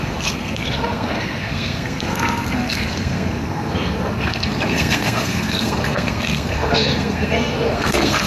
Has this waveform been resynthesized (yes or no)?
yes